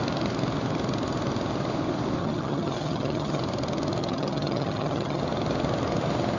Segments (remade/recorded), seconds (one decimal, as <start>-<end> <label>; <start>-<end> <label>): 0.0-2.2 recorded; 2.2-3.4 remade; 3.4-4.0 recorded; 4.0-5.2 remade; 5.2-6.4 recorded